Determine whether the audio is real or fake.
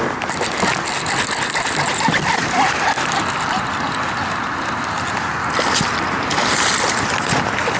real